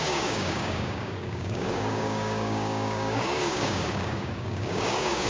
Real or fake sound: fake